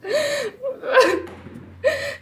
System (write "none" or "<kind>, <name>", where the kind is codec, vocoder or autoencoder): none